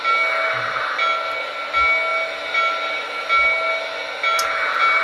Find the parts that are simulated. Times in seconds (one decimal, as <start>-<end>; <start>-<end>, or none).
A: none